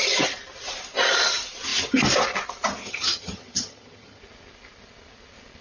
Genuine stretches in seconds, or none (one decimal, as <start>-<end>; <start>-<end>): 0.0-2.8; 4.2-5.6